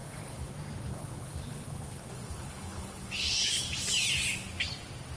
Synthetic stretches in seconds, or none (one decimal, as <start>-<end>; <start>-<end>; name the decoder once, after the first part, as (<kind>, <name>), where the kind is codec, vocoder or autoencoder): 0.0-0.5 (codec, HILCodec); 0.9-3.6